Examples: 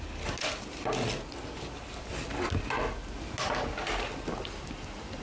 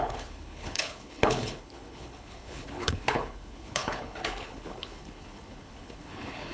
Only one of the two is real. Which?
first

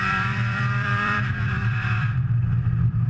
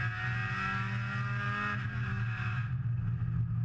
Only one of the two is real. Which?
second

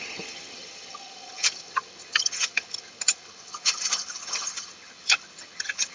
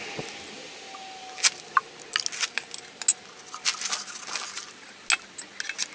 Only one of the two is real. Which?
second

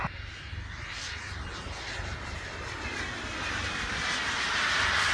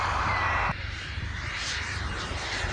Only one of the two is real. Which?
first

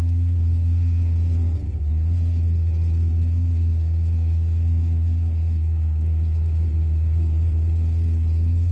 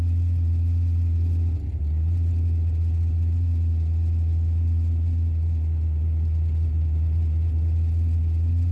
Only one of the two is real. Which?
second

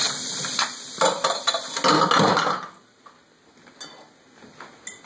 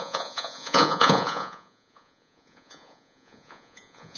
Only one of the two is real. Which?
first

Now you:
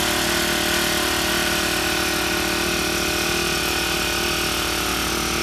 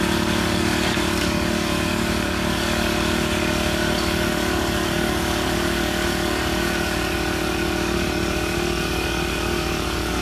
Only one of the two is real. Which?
first